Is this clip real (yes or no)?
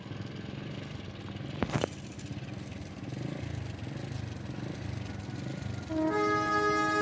yes